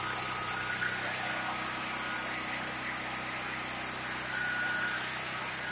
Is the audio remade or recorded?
recorded